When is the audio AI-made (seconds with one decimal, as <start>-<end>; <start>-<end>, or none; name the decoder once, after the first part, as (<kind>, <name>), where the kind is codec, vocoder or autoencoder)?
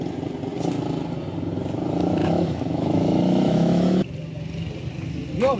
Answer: 2.2-4.0 (autoencoder, DAC-VAE)